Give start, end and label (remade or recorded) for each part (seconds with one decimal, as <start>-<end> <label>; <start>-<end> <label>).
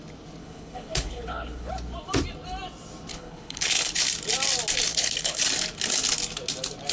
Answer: 0.0-0.4 recorded; 0.4-1.7 remade; 1.7-3.1 recorded; 3.1-4.0 remade; 4.0-4.9 recorded; 4.9-5.4 remade; 5.4-6.9 recorded